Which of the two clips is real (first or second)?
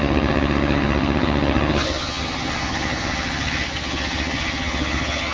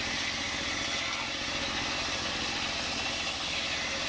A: second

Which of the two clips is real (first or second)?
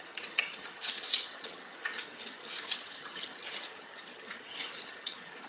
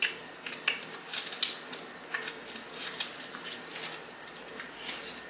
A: second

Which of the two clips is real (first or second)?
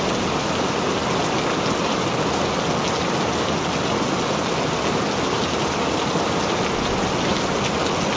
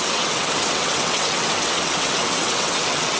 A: first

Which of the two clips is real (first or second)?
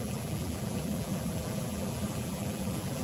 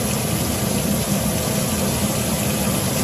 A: second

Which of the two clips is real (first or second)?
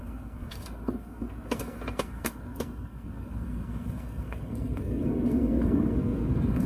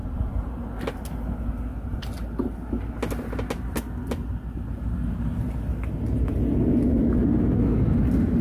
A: second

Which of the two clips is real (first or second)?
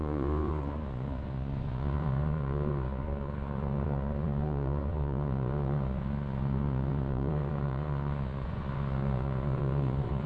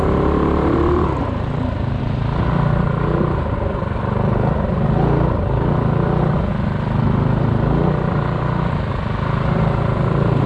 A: second